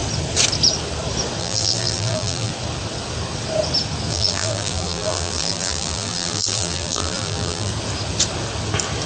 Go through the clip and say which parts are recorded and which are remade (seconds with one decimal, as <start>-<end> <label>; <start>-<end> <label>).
0.0-1.4 recorded; 1.4-2.5 remade; 2.5-4.1 recorded; 4.1-7.7 remade; 7.7-9.1 recorded